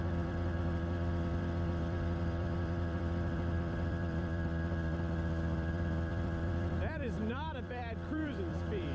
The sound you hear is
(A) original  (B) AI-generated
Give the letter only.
B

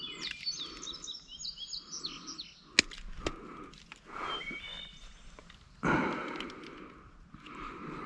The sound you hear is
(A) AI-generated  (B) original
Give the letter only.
B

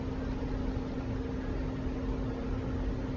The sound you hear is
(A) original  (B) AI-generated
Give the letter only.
A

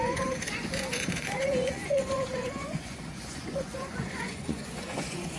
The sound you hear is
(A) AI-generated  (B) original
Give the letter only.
A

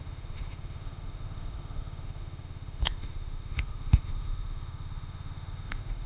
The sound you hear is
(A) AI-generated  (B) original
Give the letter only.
A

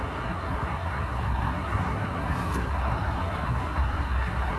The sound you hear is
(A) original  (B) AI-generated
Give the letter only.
B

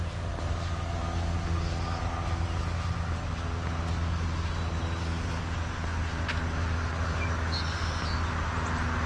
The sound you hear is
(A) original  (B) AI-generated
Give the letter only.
A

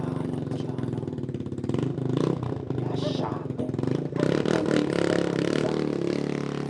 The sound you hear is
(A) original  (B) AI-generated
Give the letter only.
A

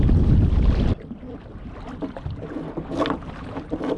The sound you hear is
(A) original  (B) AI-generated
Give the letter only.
A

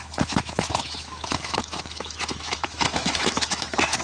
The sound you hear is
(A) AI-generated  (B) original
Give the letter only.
A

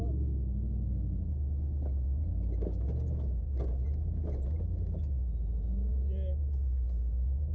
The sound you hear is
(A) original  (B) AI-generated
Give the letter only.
A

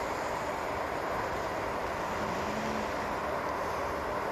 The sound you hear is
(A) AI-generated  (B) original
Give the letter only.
B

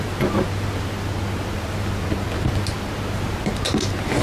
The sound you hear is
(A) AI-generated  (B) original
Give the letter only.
B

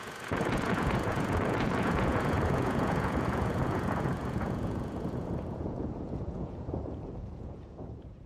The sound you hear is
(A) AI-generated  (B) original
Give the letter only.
A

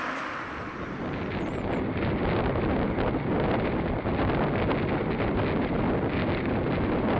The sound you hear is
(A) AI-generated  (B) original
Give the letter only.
B